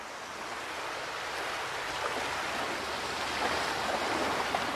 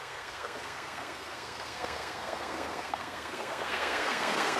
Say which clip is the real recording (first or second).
first